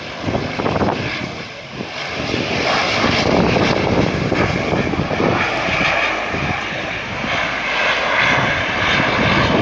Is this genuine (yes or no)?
yes